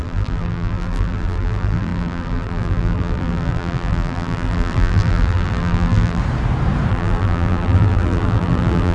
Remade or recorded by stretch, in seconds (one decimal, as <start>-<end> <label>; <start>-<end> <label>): 0.0-6.2 remade; 6.2-6.9 recorded; 6.9-8.9 remade